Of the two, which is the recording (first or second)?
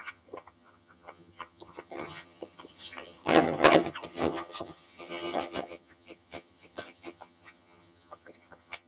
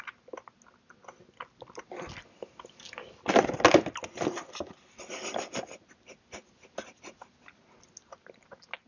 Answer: second